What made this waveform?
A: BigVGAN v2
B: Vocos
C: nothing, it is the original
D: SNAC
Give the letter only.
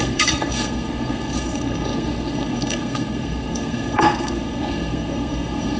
D